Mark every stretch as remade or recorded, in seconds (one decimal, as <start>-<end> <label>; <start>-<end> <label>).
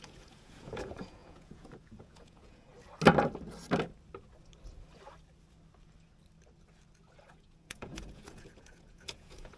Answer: 0.0-2.7 remade; 2.7-7.3 recorded; 7.3-9.6 remade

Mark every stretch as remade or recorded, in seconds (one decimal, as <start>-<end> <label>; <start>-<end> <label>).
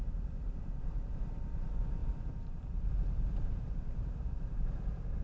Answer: 0.0-5.2 remade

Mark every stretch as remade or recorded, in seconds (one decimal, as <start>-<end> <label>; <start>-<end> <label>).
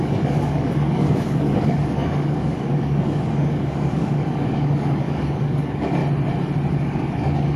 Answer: 0.0-6.0 remade; 6.0-6.7 recorded; 6.7-7.6 remade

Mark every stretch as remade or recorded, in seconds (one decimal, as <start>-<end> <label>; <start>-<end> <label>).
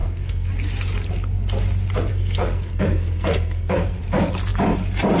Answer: 0.0-0.5 remade; 0.5-2.1 recorded; 2.1-4.0 remade; 4.0-5.2 recorded